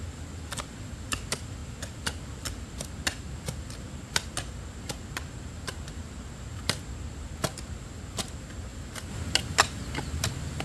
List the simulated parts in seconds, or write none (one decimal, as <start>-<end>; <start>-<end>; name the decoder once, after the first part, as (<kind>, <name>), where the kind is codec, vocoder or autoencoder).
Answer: none